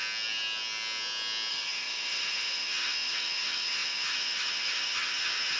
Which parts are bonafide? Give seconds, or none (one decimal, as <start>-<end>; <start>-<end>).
0.0-1.5